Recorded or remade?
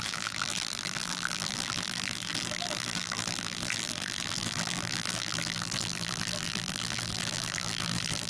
remade